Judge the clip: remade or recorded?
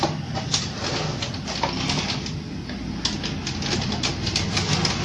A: recorded